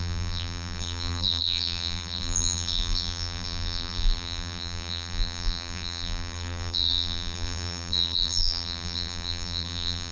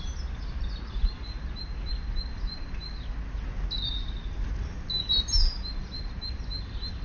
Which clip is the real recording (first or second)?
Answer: second